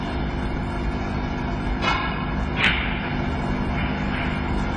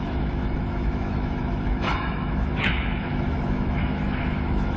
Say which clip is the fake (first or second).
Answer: second